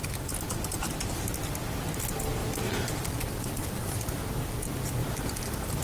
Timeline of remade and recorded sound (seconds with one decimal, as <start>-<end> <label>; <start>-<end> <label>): 0.0-2.4 recorded; 2.4-3.8 remade; 3.8-5.0 recorded; 5.0-5.8 remade